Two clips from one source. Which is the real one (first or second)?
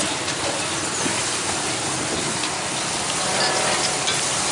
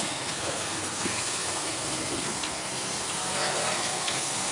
first